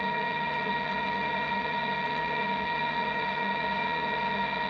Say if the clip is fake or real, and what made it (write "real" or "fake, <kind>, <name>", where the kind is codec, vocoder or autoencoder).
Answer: fake, vocoder, HiFi-GAN